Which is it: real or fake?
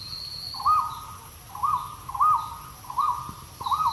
real